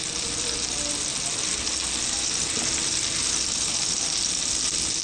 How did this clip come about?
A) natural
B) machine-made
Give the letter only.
A